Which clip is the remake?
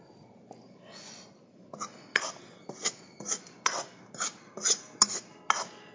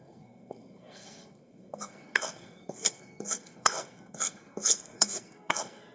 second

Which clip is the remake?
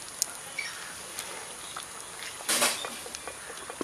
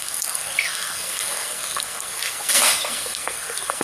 second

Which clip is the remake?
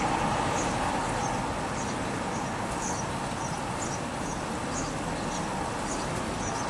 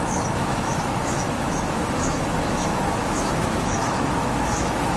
second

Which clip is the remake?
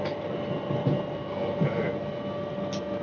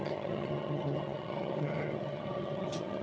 second